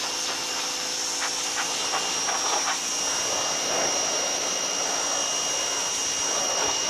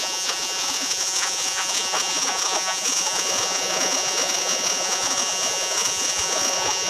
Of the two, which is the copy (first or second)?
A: second